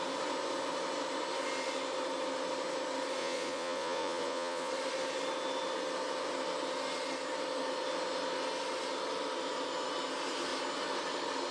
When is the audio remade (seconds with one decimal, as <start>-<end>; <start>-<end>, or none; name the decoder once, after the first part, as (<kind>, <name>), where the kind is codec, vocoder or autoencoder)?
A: 3.2-4.7 (vocoder, Vocos)